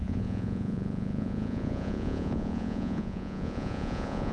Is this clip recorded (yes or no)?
no